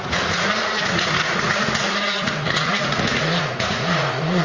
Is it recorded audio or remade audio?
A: remade